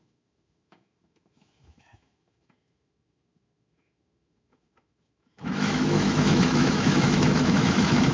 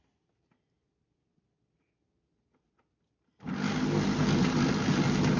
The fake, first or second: first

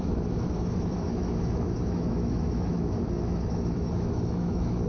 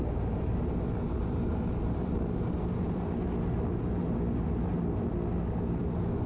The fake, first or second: first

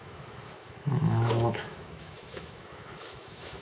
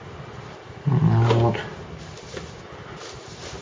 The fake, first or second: first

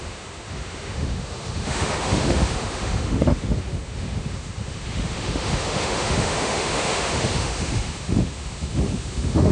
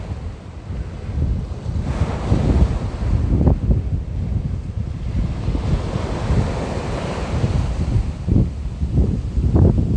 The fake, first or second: first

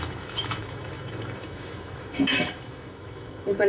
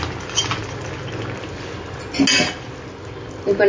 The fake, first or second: first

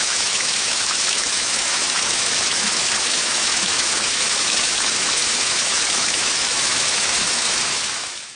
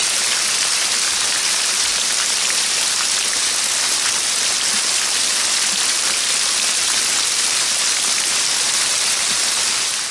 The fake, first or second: first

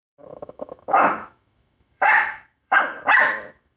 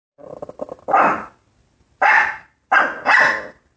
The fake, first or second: first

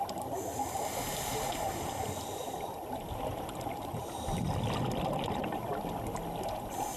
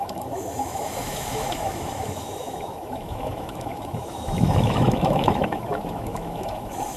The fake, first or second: second